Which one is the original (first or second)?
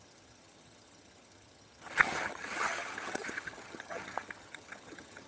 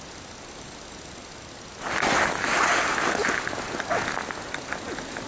second